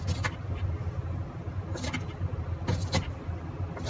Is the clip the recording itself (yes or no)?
yes